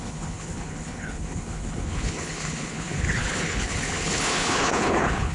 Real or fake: fake